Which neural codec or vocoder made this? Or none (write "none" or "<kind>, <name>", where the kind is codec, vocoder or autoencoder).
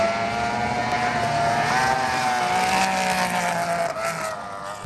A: none